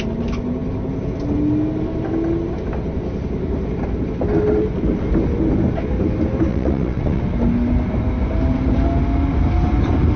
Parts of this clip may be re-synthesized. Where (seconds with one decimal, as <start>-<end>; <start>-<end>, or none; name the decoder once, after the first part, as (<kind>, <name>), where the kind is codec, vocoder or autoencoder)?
6.5-7.2 (vocoder, WaveNeXt)